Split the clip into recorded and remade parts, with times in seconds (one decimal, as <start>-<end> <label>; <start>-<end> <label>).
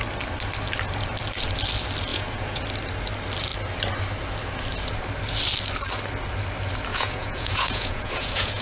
0.0-2.1 recorded; 2.1-2.6 remade; 2.6-6.9 recorded; 6.9-8.6 remade